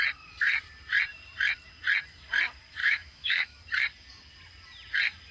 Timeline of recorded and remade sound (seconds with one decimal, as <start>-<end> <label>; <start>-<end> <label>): 0.0-2.8 recorded; 2.8-3.6 remade; 3.6-5.3 recorded